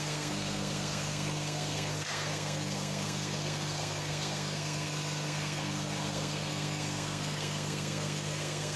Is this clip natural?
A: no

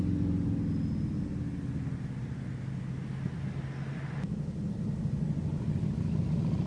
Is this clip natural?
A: yes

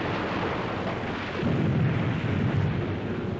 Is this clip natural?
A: no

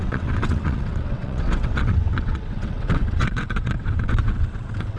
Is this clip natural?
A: no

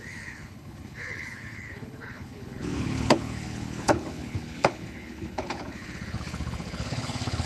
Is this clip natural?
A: no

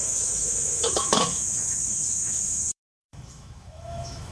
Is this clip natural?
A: no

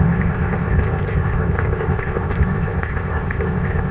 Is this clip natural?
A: no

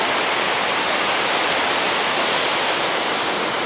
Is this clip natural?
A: yes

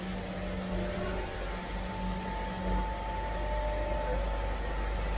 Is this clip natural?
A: yes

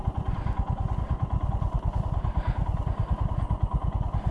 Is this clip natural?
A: yes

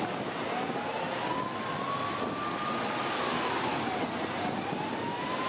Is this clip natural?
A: yes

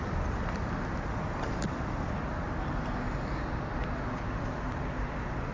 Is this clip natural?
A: yes